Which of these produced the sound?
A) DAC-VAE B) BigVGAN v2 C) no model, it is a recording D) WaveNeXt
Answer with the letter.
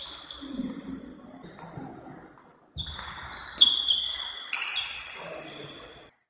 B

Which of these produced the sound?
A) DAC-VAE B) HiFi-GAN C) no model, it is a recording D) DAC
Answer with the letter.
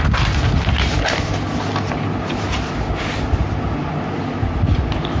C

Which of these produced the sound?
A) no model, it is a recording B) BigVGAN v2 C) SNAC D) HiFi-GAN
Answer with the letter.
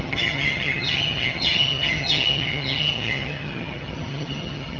D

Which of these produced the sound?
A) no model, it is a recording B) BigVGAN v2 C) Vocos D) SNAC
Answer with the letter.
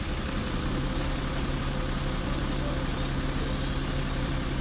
B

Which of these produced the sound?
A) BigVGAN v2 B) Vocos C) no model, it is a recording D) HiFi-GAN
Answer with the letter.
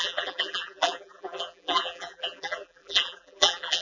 A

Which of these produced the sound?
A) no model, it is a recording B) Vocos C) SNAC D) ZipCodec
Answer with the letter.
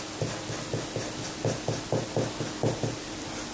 A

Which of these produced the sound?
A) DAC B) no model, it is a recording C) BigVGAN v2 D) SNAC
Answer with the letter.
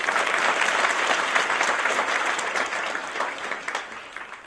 C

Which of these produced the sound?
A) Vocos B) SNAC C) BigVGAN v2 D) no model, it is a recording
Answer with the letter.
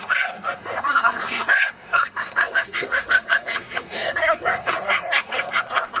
B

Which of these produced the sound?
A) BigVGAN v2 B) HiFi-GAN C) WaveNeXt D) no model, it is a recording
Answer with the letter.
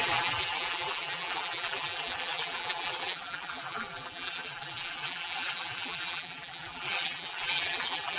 A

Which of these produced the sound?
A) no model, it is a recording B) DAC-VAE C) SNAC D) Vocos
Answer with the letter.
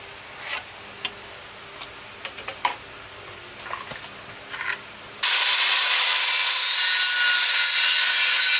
A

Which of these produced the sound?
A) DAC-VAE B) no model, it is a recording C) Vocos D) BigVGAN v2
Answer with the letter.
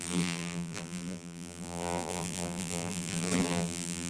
D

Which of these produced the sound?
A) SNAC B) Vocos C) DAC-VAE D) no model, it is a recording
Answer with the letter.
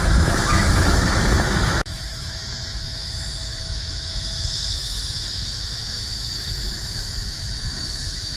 C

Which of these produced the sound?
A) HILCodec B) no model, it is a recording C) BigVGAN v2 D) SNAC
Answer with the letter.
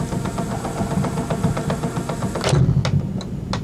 B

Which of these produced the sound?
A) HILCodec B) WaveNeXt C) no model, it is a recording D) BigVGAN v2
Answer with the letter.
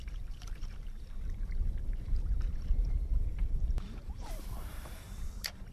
D